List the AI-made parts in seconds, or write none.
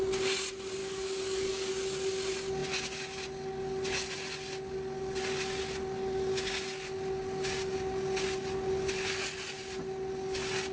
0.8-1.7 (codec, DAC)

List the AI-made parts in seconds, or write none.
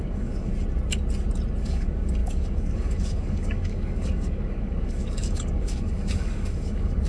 0.0-0.5 (codec, DAC); 1.6-7.1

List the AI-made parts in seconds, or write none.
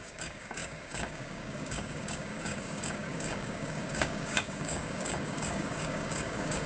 0.0-6.7 (codec, DAC)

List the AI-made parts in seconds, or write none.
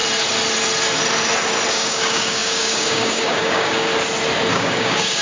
1.7-3.9 (codec, DAC); 4.5-5.2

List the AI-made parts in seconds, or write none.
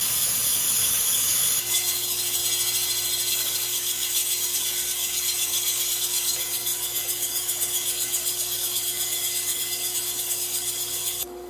0.0-2.4 (codec, DAC); 3.3-11.5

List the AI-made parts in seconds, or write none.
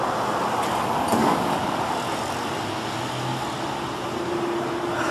1.2-1.9 (codec, DAC)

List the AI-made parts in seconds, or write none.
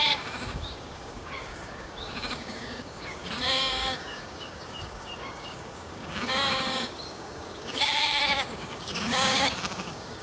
0.0-10.2 (codec, DAC)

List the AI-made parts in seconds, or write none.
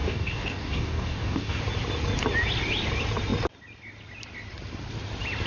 0.0-1.6 (codec, DAC)